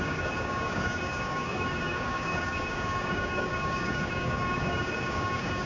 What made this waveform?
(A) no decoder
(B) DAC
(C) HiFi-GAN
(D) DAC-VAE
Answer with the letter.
B